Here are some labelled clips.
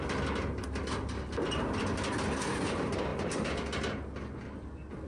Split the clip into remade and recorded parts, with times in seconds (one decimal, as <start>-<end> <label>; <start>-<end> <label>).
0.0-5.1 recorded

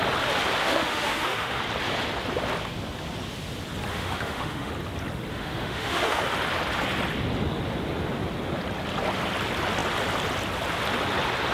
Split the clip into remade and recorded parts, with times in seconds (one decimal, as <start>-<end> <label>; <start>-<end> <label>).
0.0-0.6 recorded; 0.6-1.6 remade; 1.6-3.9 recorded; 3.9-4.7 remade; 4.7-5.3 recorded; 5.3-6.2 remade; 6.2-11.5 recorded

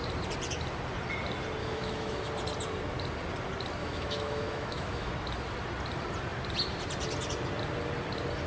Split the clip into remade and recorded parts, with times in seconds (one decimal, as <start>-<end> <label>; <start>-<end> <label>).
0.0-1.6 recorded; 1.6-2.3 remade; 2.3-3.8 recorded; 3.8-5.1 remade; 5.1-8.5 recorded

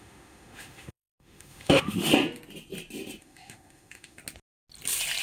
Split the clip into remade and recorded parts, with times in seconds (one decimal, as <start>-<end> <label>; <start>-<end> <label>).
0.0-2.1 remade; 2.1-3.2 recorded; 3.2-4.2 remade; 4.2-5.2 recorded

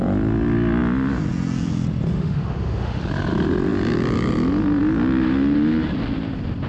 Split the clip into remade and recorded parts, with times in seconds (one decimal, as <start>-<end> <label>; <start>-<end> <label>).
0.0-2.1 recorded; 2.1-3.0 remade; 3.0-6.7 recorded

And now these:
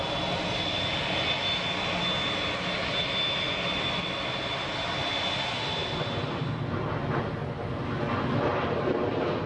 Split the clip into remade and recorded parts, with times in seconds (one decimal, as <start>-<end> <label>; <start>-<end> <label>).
0.0-9.5 recorded